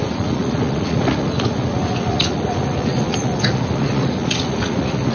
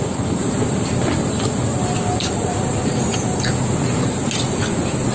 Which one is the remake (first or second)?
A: first